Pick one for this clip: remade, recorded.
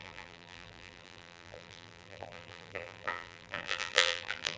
remade